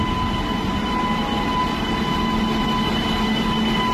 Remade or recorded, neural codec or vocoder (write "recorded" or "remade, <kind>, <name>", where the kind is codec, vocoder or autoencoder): recorded